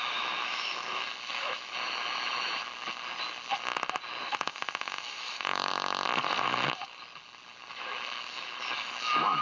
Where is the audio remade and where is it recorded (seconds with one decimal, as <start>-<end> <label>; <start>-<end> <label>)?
0.0-2.6 remade; 2.6-4.2 recorded; 4.2-5.7 remade; 5.7-7.7 recorded; 7.7-9.4 remade